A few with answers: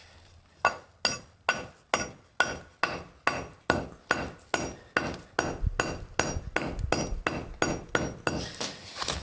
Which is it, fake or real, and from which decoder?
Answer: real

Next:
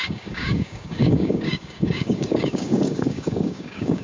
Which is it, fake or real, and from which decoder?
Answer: fake, codec, DAC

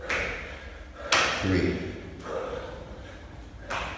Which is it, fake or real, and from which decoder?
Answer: real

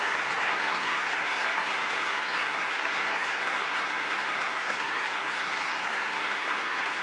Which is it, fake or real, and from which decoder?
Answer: fake, codec, SNAC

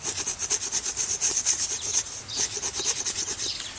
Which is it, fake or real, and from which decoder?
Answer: real